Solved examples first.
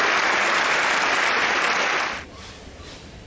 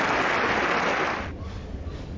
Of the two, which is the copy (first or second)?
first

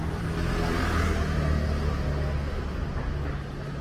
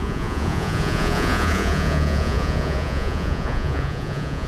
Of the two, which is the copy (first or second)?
second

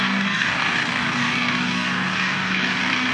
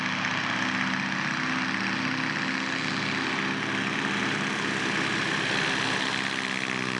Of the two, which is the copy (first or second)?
first